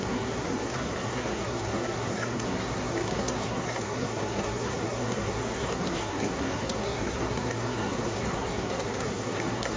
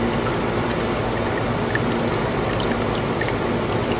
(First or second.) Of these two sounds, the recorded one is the second